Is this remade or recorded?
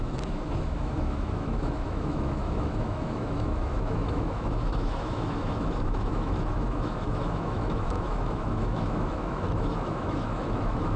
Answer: remade